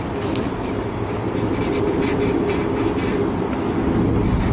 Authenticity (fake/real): real